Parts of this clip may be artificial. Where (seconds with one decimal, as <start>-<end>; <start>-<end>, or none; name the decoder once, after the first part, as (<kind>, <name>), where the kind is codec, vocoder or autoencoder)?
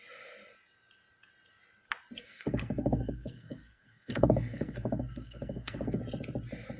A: 2.2-6.0 (codec, SNAC)